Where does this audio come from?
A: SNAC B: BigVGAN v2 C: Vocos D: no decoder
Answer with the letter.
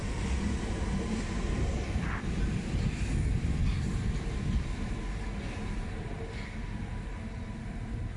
D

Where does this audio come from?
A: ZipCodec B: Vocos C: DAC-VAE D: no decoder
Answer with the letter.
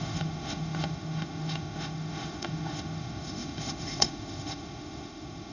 C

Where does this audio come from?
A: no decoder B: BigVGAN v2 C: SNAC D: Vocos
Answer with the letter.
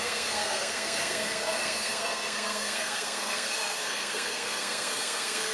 C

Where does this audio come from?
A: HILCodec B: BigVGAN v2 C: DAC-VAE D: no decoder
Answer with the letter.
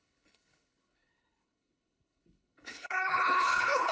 A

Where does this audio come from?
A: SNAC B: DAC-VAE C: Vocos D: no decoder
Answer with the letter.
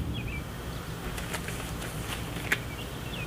D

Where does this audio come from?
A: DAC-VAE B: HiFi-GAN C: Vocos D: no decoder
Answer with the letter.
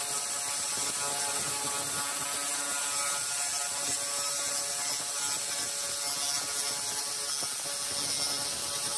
D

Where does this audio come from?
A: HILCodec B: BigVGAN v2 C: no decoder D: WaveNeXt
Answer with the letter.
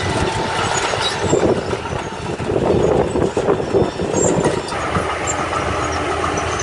C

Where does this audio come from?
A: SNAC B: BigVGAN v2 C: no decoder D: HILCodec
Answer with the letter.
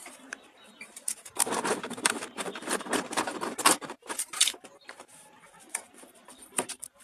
B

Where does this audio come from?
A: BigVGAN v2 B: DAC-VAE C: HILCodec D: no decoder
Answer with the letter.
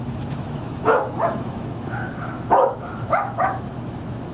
B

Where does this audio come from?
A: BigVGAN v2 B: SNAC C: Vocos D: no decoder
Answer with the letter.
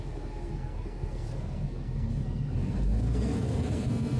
B